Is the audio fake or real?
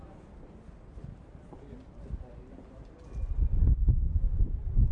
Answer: real